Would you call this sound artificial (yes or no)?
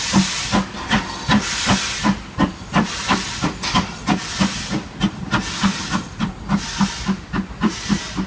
no